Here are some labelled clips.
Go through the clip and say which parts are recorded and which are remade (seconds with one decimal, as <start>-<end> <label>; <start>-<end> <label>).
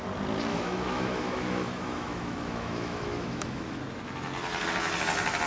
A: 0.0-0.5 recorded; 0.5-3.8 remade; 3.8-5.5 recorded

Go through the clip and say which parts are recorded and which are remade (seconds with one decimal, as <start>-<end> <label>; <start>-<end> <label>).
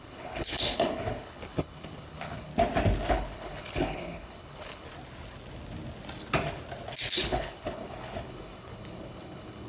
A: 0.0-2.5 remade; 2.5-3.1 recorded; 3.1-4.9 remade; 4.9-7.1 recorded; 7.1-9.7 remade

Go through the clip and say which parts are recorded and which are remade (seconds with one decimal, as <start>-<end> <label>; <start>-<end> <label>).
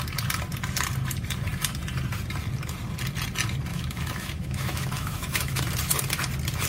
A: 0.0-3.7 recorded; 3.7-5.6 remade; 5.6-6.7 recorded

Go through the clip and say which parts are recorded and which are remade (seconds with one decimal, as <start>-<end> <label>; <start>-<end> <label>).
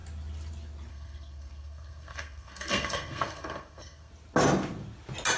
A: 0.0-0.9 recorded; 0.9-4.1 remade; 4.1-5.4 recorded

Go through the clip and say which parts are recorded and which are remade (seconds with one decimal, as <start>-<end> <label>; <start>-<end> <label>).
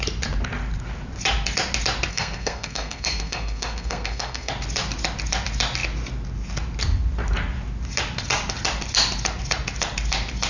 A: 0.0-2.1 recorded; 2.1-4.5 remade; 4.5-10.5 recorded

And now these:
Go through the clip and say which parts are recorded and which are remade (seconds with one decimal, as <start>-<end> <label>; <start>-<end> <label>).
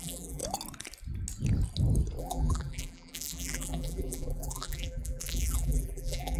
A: 0.0-0.4 remade; 0.4-2.2 recorded; 2.2-6.4 remade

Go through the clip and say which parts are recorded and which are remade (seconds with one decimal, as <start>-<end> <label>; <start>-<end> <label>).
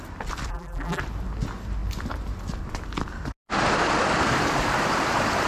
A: 0.0-0.5 recorded; 0.5-1.0 remade; 1.0-5.5 recorded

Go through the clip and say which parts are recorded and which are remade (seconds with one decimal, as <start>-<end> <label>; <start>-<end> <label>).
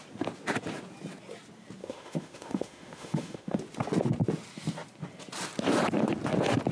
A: 0.0-1.8 recorded; 1.8-3.6 remade; 3.6-6.7 recorded